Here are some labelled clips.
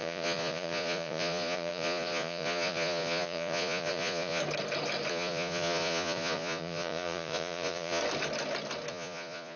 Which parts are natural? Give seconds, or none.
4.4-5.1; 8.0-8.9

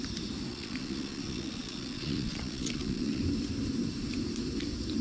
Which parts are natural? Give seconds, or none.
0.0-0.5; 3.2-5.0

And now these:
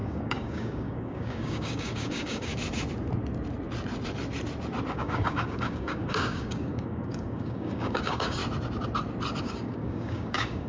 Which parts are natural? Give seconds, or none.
2.5-4.9; 8.4-9.4

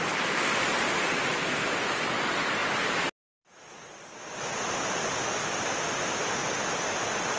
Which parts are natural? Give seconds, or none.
0.0-1.3; 2.0-7.4

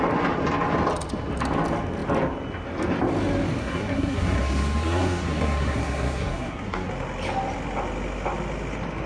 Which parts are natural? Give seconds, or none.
0.0-3.6; 6.9-9.1